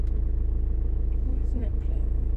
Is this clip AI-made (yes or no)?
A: yes